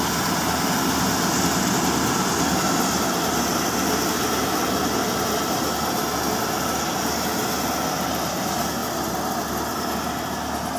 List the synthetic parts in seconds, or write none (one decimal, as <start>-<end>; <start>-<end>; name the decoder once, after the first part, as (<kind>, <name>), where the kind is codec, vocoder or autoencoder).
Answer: none